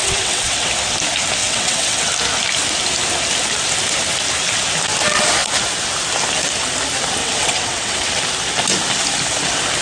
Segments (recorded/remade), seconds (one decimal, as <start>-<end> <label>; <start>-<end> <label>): 0.0-0.7 remade; 0.7-1.4 recorded; 1.4-2.1 remade; 2.1-7.2 recorded; 7.2-8.1 remade; 8.1-9.8 recorded